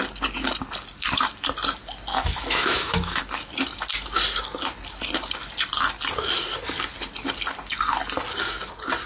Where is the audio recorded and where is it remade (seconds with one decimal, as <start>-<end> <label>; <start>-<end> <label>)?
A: 0.0-2.1 recorded; 2.1-3.2 remade; 3.2-9.1 recorded